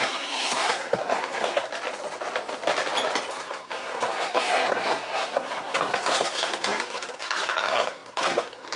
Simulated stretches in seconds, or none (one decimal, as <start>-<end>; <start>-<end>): 0.0-1.7; 3.3-8.8